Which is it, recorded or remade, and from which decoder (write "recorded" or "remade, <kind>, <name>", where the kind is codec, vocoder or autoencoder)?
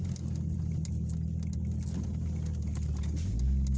recorded